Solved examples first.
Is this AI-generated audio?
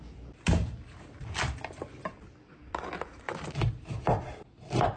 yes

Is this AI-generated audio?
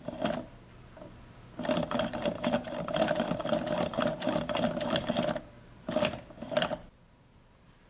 no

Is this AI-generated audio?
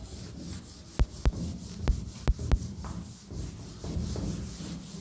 no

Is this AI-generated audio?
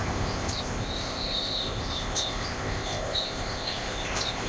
yes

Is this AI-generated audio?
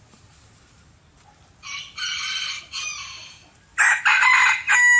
no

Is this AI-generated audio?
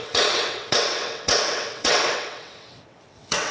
yes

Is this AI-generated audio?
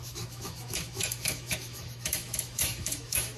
yes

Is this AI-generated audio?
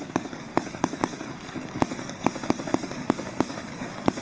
yes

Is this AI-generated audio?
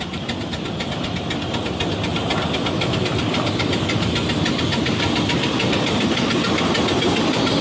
no